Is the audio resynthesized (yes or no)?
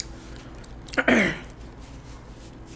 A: no